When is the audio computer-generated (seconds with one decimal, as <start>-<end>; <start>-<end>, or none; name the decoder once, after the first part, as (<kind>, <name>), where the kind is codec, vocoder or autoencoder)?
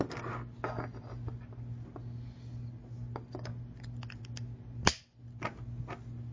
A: none